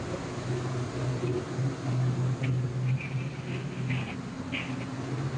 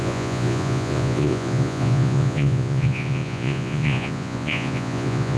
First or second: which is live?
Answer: first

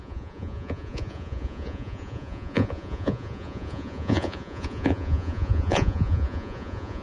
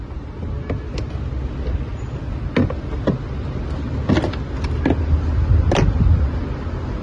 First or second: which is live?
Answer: second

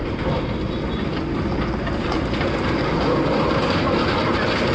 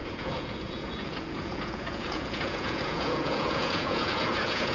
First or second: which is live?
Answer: first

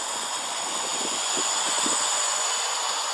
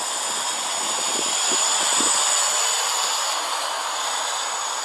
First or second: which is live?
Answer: second